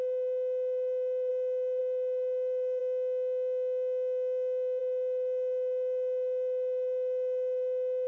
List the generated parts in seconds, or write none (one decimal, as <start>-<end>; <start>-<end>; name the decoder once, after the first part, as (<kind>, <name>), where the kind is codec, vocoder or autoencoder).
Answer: 0.0-2.8 (autoencoder, DAC-VAE); 4.8-8.1